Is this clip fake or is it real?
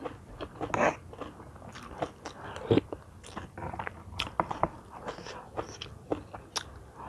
real